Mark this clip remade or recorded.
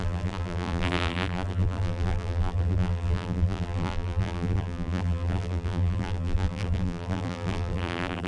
remade